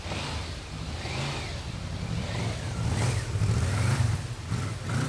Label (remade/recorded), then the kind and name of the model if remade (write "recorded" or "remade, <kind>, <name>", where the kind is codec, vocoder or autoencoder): recorded